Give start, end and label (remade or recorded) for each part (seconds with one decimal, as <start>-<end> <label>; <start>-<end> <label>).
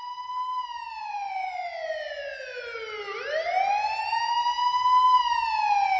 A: 0.0-6.0 recorded